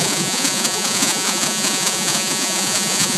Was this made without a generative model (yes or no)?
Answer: no